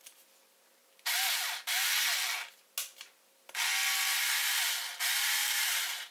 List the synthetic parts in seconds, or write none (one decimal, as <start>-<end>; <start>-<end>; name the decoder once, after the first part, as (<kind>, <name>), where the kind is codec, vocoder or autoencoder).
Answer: 5.4-6.1 (vocoder, BigVGAN v2)